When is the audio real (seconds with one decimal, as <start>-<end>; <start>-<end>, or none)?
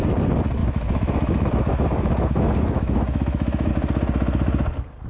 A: 0.0-0.6; 3.7-5.1